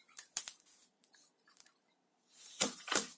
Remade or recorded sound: remade